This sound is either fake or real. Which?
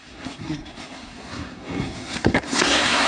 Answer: fake